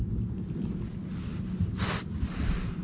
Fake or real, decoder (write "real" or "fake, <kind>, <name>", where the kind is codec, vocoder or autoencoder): real